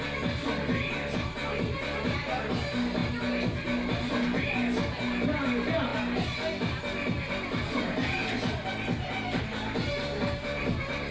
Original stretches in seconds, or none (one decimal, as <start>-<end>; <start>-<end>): 0.0-11.1

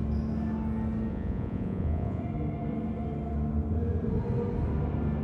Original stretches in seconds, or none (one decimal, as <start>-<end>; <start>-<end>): 0.0-1.1; 2.2-5.2

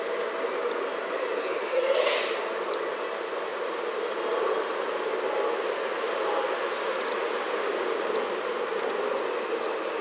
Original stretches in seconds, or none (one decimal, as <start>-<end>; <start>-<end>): 0.0-10.0

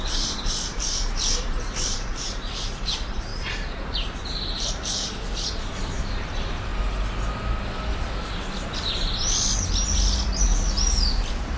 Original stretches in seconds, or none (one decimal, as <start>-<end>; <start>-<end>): 6.7-11.1

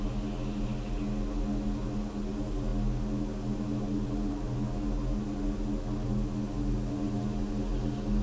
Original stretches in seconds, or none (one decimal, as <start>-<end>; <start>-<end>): 0.0-8.2

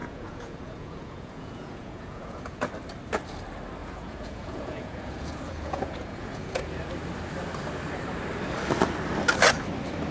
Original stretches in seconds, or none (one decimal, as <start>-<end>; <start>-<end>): 2.7-3.8; 6.6-10.1

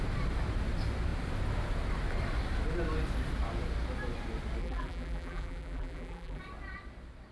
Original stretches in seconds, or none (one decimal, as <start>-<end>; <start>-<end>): 0.0-4.6; 6.4-7.3

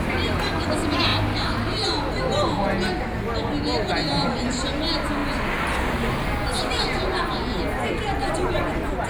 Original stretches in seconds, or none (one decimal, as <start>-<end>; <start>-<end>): 0.0-9.1